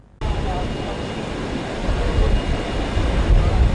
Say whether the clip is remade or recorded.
recorded